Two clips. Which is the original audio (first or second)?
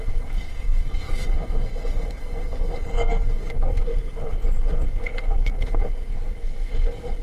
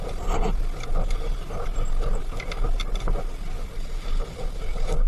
second